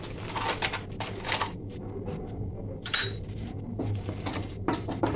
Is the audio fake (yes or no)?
no